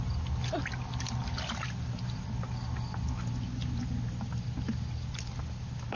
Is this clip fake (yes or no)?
no